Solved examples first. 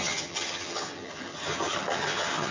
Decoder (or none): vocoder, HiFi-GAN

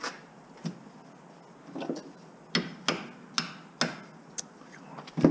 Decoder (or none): none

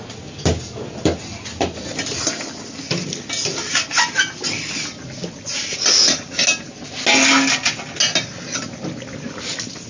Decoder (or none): none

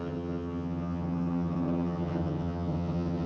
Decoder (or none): vocoder, HiFi-GAN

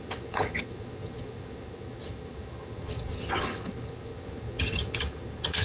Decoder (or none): vocoder, HiFi-GAN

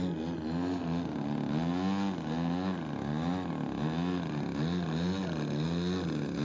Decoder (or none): none